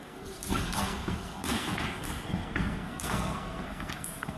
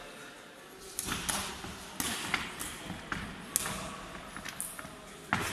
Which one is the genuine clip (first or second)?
second